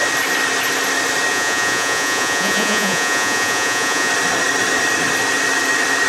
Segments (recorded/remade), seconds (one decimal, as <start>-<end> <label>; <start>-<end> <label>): 0.0-1.3 recorded; 1.3-4.1 remade; 4.1-6.1 recorded